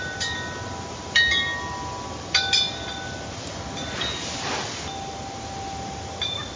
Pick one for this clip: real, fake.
real